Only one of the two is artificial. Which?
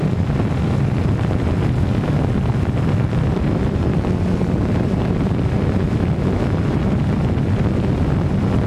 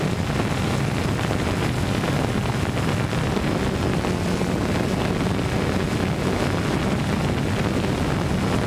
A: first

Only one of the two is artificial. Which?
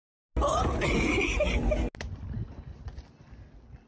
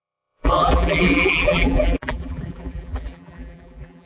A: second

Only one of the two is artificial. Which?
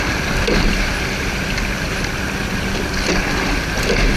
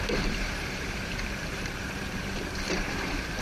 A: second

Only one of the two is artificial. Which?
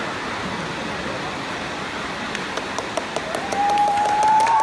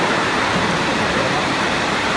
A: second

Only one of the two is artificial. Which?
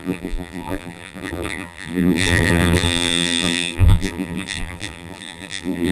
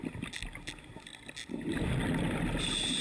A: first